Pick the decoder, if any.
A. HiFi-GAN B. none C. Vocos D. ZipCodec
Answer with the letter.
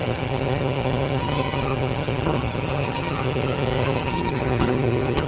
A